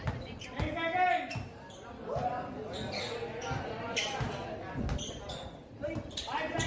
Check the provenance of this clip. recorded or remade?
recorded